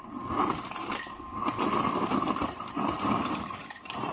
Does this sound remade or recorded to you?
remade